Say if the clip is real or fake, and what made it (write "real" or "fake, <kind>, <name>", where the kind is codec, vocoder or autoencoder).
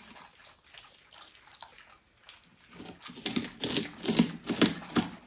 real